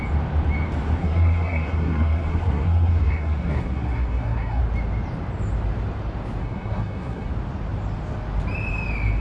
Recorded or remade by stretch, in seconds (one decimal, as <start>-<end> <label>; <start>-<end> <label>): 0.0-1.0 recorded; 1.0-4.6 remade; 4.6-6.4 recorded; 6.4-7.3 remade; 7.3-9.2 recorded